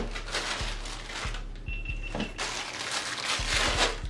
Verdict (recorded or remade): recorded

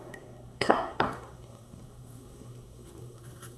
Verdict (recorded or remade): remade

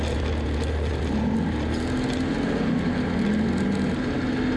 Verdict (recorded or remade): recorded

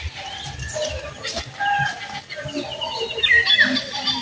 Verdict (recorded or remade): recorded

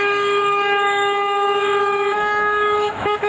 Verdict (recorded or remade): remade